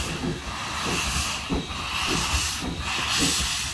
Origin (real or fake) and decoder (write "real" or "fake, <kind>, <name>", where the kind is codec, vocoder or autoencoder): real